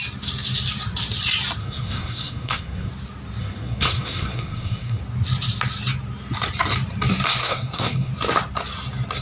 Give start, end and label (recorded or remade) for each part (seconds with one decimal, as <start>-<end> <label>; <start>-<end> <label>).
0.0-1.6 recorded; 1.6-2.9 remade; 2.9-3.4 recorded; 3.4-5.0 remade; 5.0-7.4 recorded; 7.4-8.1 remade; 8.1-9.2 recorded